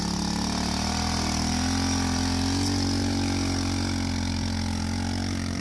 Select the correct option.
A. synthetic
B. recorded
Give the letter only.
B